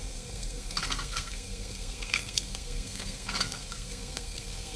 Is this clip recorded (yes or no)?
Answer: no